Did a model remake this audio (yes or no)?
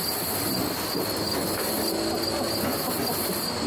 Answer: no